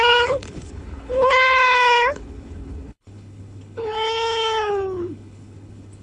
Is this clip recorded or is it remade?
remade